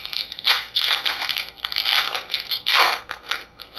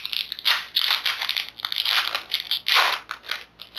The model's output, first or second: first